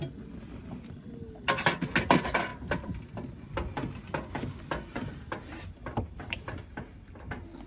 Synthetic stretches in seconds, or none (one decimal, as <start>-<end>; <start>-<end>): 5.8-7.1